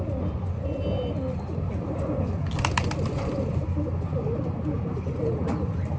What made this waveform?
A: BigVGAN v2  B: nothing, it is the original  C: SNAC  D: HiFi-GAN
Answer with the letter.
B